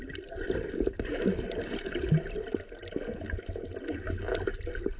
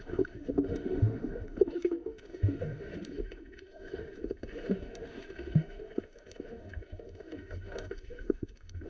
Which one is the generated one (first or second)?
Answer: second